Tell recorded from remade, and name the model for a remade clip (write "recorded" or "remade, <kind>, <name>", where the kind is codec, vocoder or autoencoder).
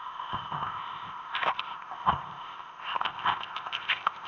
remade, codec, ZipCodec